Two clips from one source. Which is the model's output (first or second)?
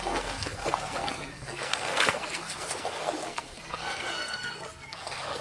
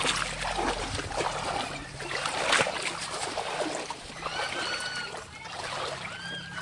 first